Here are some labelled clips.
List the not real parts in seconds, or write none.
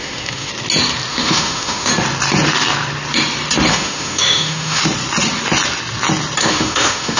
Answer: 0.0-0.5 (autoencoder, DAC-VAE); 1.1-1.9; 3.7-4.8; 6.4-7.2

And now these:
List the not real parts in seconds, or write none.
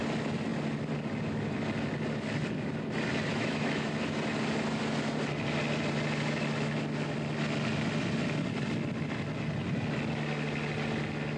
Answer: 3.3-3.9 (autoencoder, DAC-VAE)